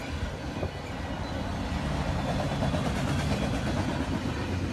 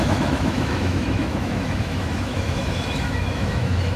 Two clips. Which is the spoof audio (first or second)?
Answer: second